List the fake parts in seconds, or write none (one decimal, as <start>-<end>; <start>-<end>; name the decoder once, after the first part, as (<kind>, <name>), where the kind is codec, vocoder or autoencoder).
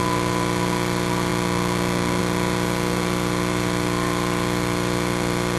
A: 0.0-1.3 (vocoder, BigVGAN v2); 2.2-5.6